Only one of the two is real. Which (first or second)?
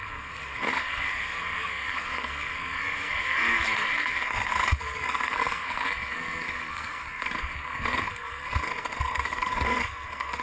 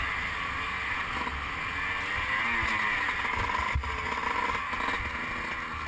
second